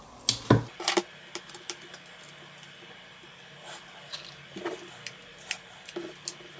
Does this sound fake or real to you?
real